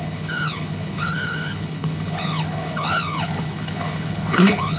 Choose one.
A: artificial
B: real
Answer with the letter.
A